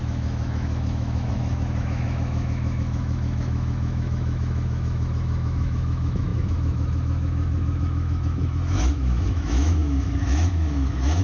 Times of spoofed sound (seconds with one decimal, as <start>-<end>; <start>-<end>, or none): 0.0-11.2